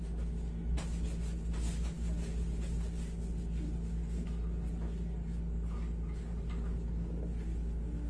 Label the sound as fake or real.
real